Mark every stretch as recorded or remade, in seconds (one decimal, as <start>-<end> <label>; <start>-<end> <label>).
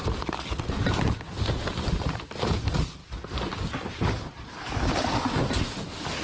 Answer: 0.0-6.2 recorded